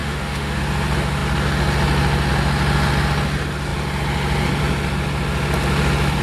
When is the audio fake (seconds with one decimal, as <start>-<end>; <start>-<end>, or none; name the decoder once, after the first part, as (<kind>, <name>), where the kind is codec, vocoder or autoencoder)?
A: 0.0-0.6 (autoencoder, DAC-VAE)